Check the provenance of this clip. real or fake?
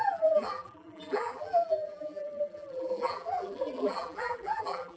fake